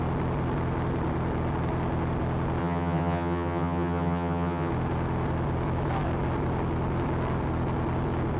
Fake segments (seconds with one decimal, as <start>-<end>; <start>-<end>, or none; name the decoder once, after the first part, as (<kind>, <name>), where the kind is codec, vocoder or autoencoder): 2.6-4.7 (vocoder, HiFi-GAN)